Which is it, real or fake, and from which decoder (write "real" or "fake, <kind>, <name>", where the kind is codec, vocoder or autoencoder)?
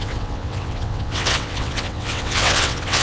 fake, vocoder, WaveNeXt